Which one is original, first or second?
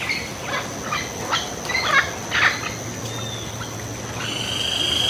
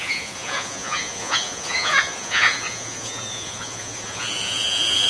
first